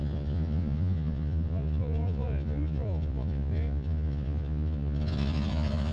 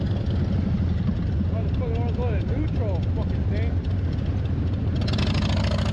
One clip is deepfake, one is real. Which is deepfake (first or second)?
first